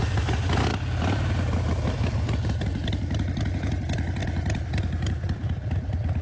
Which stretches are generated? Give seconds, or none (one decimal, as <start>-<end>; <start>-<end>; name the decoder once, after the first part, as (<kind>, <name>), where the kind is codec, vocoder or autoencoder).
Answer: 0.0-0.7 (vocoder, BigVGAN v2); 1.9-6.2